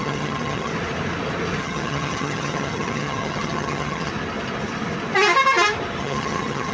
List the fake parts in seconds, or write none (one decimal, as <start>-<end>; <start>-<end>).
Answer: 0.0-0.7; 1.6-4.1; 6.0-6.7